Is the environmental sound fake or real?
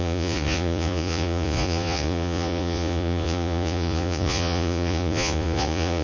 fake